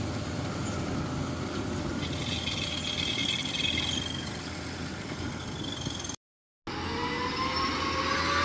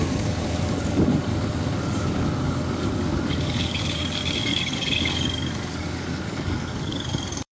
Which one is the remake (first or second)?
second